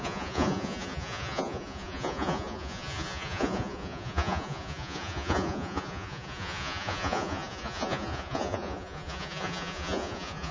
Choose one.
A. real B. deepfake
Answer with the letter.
B